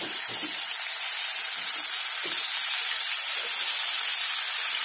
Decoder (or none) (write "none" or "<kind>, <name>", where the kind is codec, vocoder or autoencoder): none